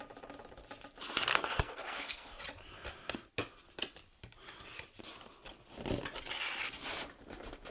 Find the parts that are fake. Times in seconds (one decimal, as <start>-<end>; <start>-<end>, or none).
1.3-2.4